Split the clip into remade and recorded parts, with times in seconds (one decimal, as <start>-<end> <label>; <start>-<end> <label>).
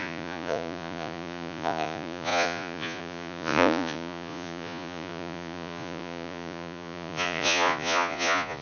0.0-8.6 remade